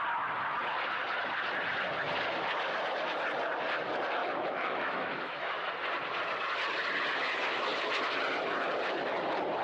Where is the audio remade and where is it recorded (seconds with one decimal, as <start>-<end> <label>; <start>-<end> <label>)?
0.0-4.2 recorded; 4.2-5.7 remade; 5.7-9.6 recorded